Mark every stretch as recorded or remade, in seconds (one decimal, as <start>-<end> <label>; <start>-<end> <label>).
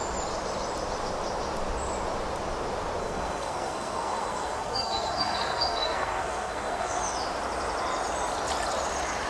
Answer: 0.0-3.0 recorded; 3.0-7.0 remade; 7.0-9.3 recorded